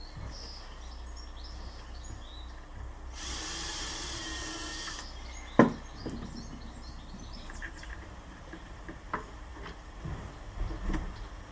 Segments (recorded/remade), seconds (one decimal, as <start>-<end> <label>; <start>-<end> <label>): 0.0-3.7 recorded; 3.7-4.2 remade; 4.2-7.2 recorded; 7.2-9.5 remade; 9.5-11.5 recorded